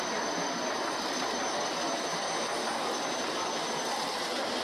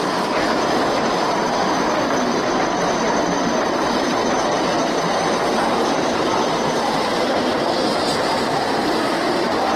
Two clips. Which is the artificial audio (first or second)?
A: second